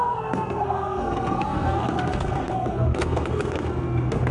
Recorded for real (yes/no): no